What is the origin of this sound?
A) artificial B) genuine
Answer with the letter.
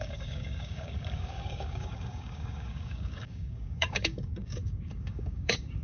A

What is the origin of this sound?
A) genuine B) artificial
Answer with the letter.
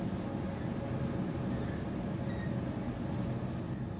A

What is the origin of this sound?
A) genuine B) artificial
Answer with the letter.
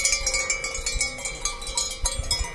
A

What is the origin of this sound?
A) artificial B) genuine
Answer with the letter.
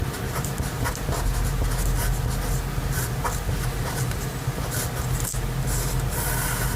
B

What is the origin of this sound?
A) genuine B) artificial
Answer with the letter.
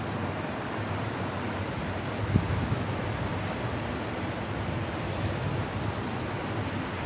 A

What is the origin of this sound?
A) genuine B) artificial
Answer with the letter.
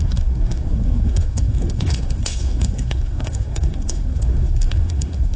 B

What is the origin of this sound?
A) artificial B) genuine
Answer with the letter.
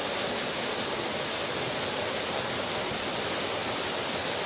B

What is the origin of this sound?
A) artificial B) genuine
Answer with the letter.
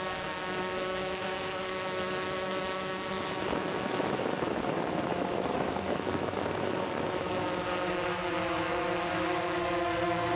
A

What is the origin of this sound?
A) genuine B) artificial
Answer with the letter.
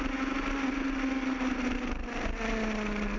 A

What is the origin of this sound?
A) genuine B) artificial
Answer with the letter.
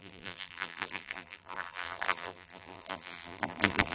B